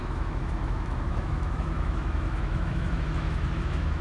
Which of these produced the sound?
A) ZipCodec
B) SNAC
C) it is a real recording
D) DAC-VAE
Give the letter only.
D